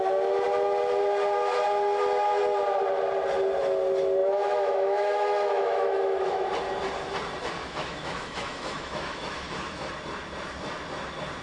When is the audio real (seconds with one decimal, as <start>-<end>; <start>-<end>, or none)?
0.0-4.2; 6.5-7.6; 9.9-11.4